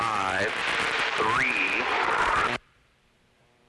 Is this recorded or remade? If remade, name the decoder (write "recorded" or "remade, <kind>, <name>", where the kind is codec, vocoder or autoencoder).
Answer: remade, vocoder, BigVGAN v2